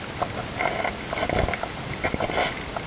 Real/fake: real